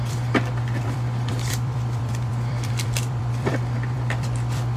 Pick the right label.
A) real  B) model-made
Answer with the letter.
B